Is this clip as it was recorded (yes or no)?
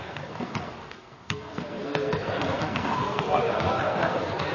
no